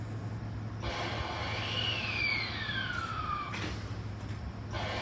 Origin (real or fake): real